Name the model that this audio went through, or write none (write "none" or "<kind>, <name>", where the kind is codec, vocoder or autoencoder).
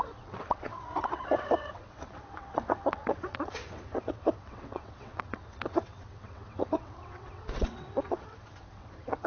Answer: vocoder, WaveNeXt